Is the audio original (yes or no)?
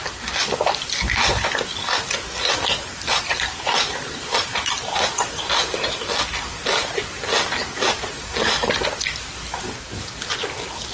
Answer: yes